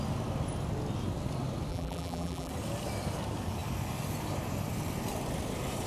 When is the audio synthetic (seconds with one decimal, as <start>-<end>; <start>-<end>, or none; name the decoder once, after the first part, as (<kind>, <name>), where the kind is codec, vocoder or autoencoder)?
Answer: 1.7-2.5 (vocoder, BigVGAN v2)